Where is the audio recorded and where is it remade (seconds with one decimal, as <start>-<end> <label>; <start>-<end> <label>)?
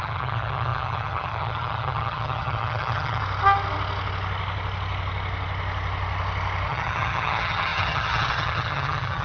0.0-3.2 remade; 3.2-6.7 recorded; 6.7-9.2 remade